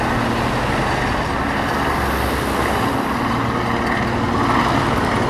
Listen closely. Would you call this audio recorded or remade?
recorded